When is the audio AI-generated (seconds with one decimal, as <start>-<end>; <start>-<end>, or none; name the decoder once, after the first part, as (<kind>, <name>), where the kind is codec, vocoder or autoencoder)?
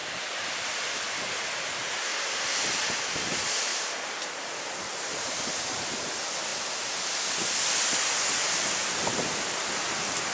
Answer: 3.7-5.4 (vocoder, BigVGAN v2)